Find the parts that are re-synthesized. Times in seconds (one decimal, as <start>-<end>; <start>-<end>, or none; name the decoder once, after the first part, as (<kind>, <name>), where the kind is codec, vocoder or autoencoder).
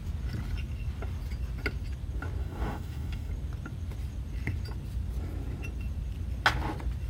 2.4-3.3 (codec, DAC)